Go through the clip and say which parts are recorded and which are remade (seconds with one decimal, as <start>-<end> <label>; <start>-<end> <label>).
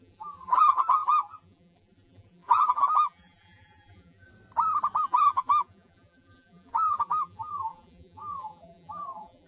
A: 0.0-4.3 remade; 4.3-5.0 recorded; 5.0-9.5 remade